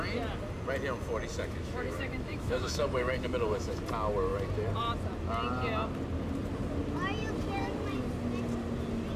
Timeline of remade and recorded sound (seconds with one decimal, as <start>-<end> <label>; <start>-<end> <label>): 0.0-1.3 recorded; 1.3-3.8 remade; 3.8-9.2 recorded